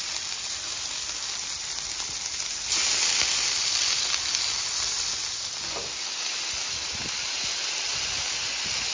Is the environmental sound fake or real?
real